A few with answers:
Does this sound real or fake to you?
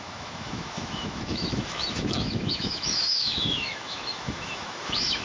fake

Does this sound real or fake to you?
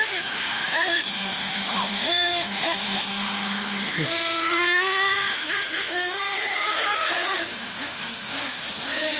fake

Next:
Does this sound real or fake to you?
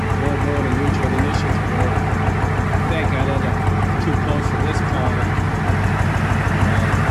real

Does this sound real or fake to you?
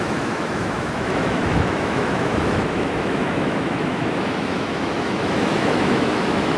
fake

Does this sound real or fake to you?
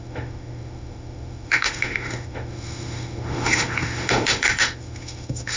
fake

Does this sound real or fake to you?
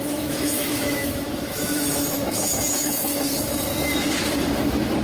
fake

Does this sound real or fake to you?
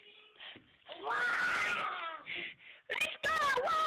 fake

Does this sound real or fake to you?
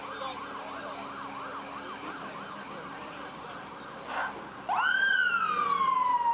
real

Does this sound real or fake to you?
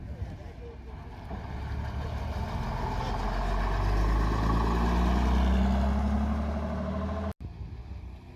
real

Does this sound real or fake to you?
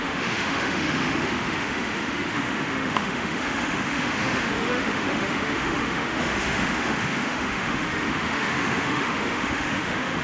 fake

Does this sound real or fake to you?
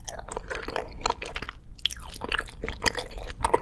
real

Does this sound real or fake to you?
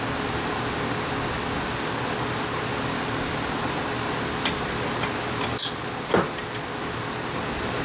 real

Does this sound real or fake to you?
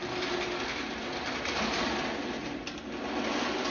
real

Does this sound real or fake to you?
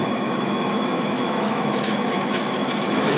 fake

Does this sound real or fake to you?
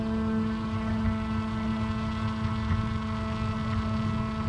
real